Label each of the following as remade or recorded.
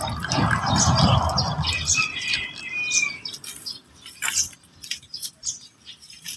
recorded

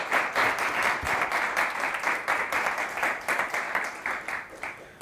recorded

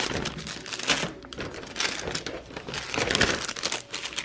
recorded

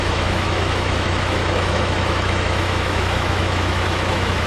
remade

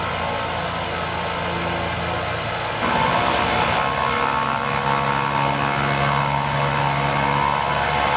recorded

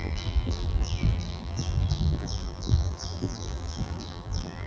remade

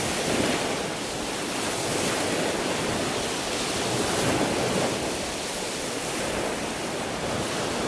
recorded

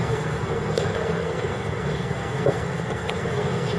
remade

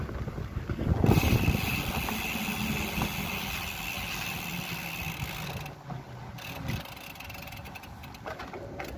recorded